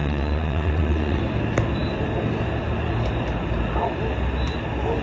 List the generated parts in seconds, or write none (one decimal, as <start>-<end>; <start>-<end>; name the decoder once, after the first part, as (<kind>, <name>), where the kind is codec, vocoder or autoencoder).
0.0-1.2 (vocoder, WaveNeXt)